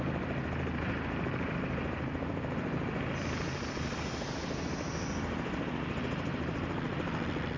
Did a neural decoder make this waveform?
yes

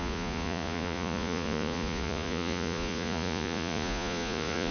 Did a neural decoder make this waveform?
yes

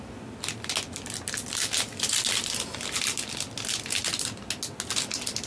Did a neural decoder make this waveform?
no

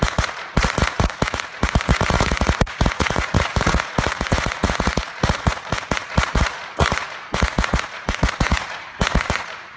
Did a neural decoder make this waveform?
yes